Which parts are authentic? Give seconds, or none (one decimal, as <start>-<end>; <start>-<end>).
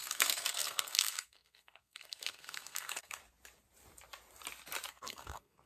3.2-4.9